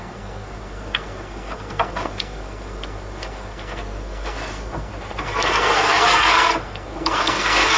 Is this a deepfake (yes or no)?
yes